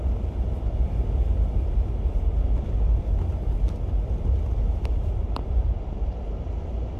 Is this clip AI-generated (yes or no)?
no